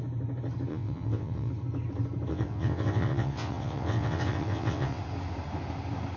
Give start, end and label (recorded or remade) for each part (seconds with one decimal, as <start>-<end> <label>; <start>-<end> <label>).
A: 0.0-0.7 recorded; 0.7-1.5 remade; 1.5-2.3 recorded; 2.3-5.0 remade; 5.0-6.2 recorded